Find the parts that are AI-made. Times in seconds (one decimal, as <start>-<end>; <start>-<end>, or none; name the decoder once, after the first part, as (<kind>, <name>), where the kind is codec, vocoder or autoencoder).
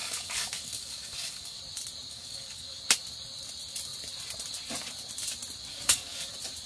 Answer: 0.0-1.6 (codec, DAC); 2.1-2.8; 5.7-6.3